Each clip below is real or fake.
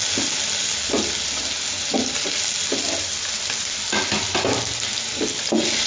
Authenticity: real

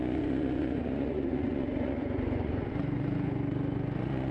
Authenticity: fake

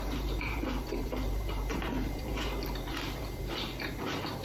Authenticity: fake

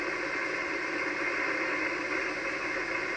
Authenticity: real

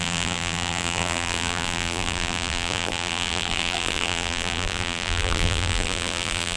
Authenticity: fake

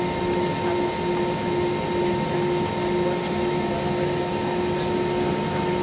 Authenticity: real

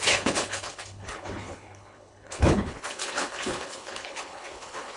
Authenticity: fake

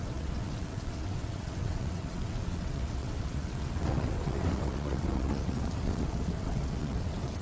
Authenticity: fake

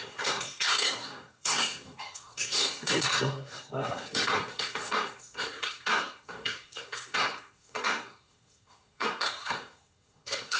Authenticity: fake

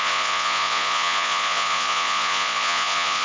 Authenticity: fake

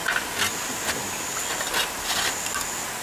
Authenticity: real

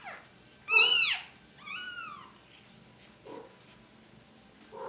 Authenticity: real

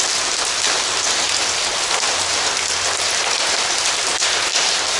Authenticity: real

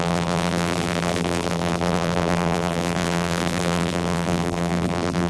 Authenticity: fake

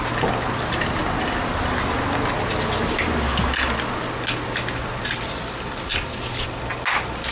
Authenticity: real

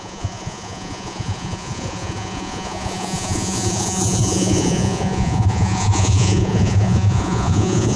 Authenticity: fake